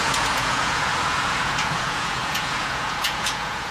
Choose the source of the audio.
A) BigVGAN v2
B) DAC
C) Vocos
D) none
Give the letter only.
C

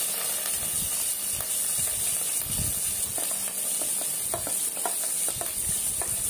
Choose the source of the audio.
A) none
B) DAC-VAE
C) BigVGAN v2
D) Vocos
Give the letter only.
A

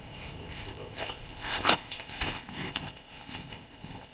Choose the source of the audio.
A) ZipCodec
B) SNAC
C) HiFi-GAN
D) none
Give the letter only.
A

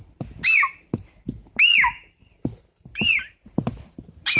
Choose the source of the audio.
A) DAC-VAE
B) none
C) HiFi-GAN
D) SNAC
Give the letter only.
B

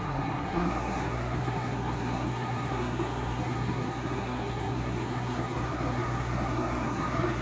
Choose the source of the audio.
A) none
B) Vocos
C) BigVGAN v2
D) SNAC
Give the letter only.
D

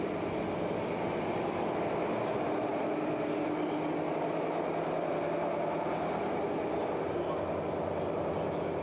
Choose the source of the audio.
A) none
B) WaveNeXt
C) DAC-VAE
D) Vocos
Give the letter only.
A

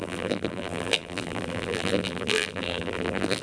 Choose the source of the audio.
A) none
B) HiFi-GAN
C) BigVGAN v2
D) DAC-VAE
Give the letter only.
C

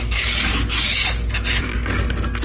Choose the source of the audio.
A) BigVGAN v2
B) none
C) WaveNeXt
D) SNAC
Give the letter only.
B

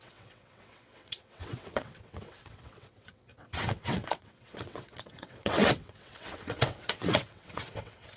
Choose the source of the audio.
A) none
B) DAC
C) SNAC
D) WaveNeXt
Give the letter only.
D